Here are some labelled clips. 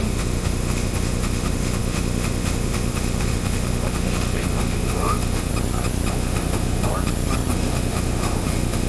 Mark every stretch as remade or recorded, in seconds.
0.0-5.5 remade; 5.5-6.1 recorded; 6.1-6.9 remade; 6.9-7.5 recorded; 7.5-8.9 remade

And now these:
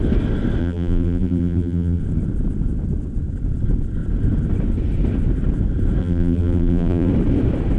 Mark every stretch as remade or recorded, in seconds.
0.0-0.6 recorded; 0.6-2.0 remade; 2.0-6.0 recorded; 6.0-7.1 remade; 7.1-7.8 recorded

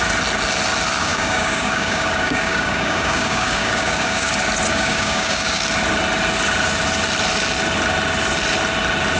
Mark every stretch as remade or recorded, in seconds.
0.0-1.0 recorded; 1.0-4.3 remade; 4.3-4.7 recorded; 4.7-5.6 remade; 5.6-9.2 recorded

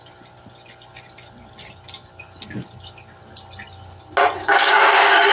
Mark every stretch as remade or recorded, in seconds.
0.0-4.4 recorded; 4.4-5.3 remade

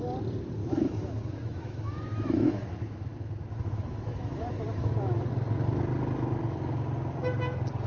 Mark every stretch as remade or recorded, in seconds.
0.0-0.6 recorded; 0.6-5.3 remade; 5.3-7.9 recorded

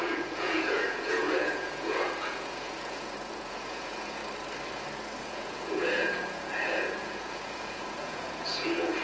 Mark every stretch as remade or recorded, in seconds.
0.0-4.2 remade; 4.2-5.2 recorded; 5.2-9.0 remade